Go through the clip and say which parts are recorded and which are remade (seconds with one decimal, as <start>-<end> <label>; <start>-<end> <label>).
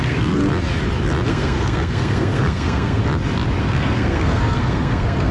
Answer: 0.0-0.4 remade; 0.4-1.3 recorded; 1.3-3.0 remade; 3.0-3.6 recorded; 3.6-5.3 remade